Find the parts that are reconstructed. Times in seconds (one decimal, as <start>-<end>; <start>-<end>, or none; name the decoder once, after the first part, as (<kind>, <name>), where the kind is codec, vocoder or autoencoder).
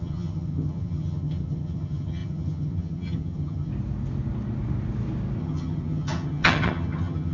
0.0-3.7 (vocoder, HiFi-GAN); 5.4-7.3